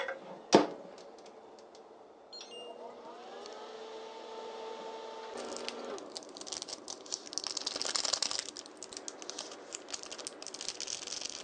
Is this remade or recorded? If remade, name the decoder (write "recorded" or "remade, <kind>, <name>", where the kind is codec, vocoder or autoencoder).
recorded